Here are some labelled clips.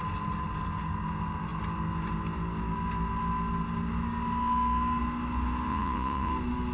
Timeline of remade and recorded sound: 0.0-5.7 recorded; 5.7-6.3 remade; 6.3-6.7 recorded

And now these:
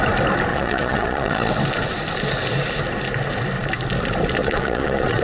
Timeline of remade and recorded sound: 0.0-0.5 recorded; 0.5-1.5 remade; 1.5-4.4 recorded; 4.4-5.2 remade